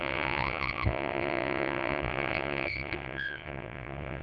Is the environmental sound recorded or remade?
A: remade